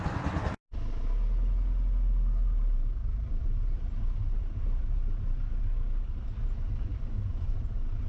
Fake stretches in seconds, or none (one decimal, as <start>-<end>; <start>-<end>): 2.4-5.6; 7.3-8.1